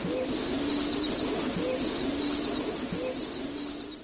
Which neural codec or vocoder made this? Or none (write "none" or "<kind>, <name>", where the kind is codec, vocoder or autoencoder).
none